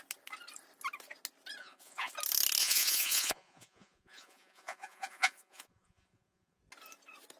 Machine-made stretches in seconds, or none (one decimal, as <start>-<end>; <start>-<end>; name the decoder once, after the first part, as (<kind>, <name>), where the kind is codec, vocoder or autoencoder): 1.6-2.1 (vocoder, Vocos); 2.6-6.6